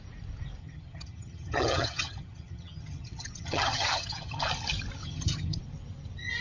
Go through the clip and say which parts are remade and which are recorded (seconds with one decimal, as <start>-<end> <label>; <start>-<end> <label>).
0.0-0.6 recorded; 0.6-4.4 remade; 4.4-5.0 recorded; 5.0-5.6 remade; 5.6-6.4 recorded

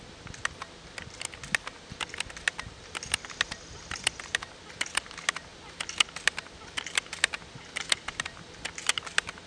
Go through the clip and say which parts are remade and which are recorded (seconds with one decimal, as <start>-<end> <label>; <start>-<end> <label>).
0.0-9.5 recorded

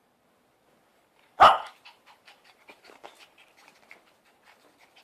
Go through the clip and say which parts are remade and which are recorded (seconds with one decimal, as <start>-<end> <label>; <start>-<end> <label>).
0.0-0.9 recorded; 0.9-2.8 remade; 2.8-5.0 recorded

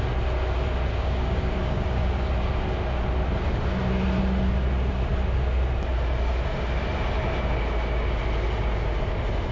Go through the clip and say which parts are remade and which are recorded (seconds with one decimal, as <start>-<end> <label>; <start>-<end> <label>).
0.0-0.9 recorded; 0.9-2.3 remade; 2.3-9.5 recorded

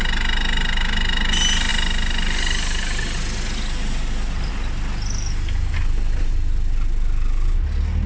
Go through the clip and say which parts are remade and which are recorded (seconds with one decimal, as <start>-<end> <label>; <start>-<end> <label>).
0.0-8.1 recorded